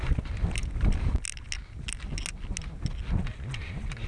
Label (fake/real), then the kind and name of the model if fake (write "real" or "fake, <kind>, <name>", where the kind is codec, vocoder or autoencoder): real